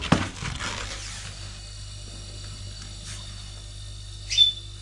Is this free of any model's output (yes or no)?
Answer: yes